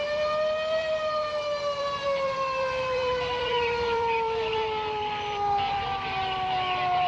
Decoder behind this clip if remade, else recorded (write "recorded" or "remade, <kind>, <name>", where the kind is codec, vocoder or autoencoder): remade, vocoder, BigVGAN v2